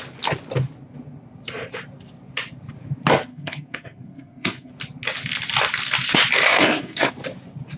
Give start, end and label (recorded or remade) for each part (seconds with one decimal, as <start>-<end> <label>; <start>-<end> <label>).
0.0-3.3 recorded; 3.3-4.7 remade; 4.7-6.5 recorded; 6.5-7.1 remade; 7.1-7.8 recorded